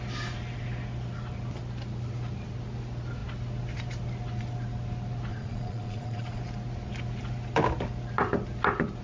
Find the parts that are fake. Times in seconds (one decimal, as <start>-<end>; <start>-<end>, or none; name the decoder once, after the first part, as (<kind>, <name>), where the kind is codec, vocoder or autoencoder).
5.3-6.4 (vocoder, Vocos)